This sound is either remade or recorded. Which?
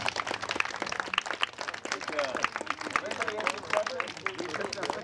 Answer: recorded